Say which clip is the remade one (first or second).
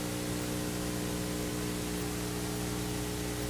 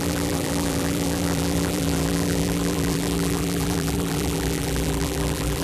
second